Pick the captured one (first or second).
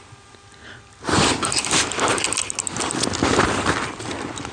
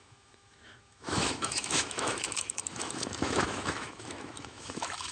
first